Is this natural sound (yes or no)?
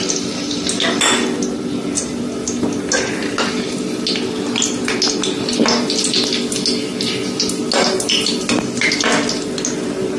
yes